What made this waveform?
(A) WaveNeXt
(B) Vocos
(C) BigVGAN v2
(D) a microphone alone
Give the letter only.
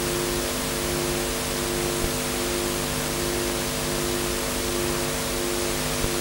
D